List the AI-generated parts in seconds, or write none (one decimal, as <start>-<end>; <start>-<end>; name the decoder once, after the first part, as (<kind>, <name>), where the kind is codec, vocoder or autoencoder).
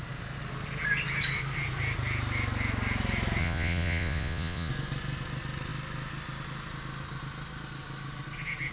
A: 3.4-4.7 (vocoder, Vocos)